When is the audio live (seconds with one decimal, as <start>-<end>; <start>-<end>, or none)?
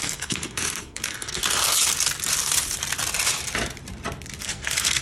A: 1.4-4.4